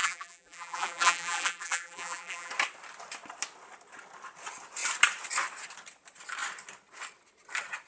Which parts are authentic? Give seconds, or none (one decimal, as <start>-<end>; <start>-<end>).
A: 2.5-7.9